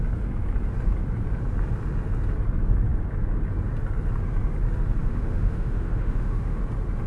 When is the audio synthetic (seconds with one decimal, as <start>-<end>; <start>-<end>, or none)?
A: 5.0-6.6